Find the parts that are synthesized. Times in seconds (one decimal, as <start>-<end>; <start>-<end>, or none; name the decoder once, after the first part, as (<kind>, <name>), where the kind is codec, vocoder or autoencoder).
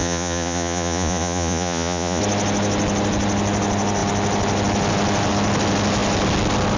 0.0-2.2 (vocoder, Vocos)